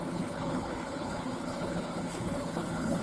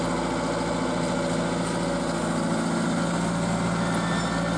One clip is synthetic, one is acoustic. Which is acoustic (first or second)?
second